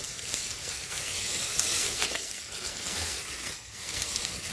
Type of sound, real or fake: fake